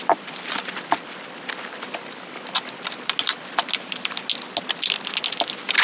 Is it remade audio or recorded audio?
recorded